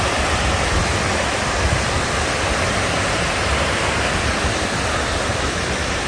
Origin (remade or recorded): recorded